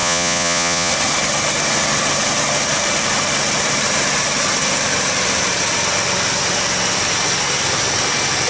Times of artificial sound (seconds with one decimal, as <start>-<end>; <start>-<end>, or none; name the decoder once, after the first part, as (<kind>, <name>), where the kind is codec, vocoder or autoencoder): 0.0-0.9 (vocoder, Vocos)